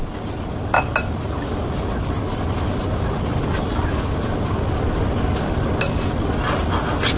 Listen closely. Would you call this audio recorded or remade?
recorded